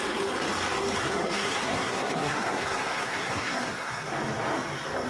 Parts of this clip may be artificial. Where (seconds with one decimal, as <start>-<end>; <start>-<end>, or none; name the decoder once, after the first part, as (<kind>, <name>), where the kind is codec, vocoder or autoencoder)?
1.0-4.1 (codec, SNAC)